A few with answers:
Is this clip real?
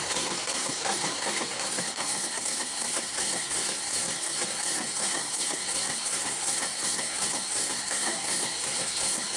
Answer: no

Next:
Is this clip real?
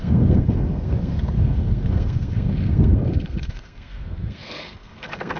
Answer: no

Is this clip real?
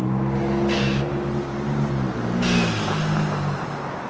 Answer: yes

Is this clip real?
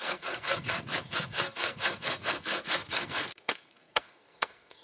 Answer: no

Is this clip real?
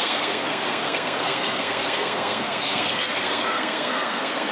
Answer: no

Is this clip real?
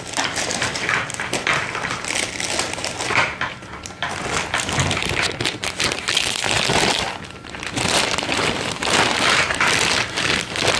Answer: yes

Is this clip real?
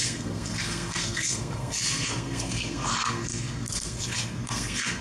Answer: no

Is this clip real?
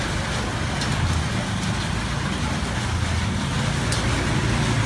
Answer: yes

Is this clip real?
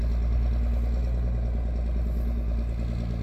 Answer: yes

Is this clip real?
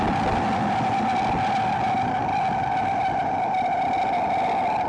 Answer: yes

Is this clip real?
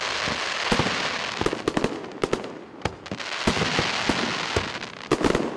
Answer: yes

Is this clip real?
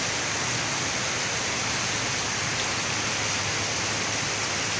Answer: yes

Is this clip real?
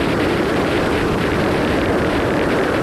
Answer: yes